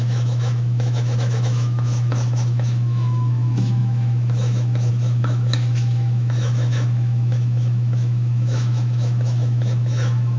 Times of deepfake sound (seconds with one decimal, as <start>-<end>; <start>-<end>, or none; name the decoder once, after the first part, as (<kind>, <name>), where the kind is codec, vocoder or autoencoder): 0.0-10.4 (autoencoder, DAC-VAE)